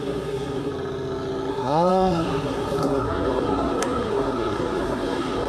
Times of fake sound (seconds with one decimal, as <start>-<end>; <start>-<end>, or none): 0.0-0.7; 1.5-5.5